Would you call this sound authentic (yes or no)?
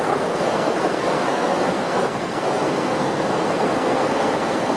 no